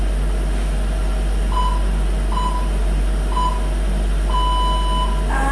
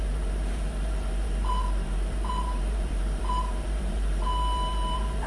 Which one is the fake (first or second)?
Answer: second